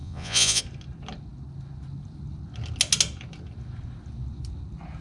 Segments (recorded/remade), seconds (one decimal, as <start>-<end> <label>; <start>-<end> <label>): 0.0-0.6 remade; 0.6-5.0 recorded